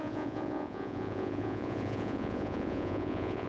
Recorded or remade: remade